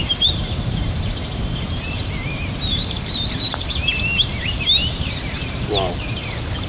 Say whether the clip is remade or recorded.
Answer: remade